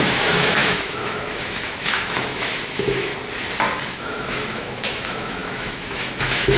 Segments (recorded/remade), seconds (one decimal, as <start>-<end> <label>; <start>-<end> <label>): 0.0-3.1 remade; 3.1-4.0 recorded; 4.0-6.6 remade

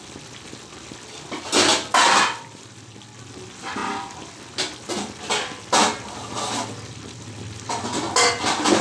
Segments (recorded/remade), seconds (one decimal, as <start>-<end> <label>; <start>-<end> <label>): 0.0-8.8 recorded